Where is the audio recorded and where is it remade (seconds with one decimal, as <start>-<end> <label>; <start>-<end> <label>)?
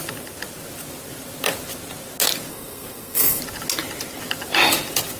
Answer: 0.0-2.5 recorded; 2.5-3.4 remade; 3.4-5.2 recorded